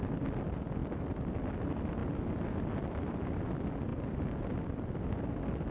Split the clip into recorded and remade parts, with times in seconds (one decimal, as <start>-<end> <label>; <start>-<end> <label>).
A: 0.0-5.7 recorded